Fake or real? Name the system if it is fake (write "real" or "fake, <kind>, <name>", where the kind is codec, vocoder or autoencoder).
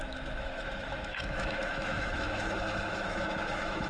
fake, autoencoder, DAC-VAE